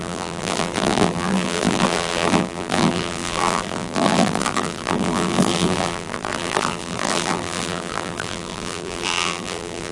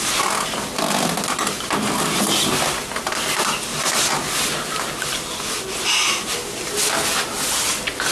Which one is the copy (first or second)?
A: first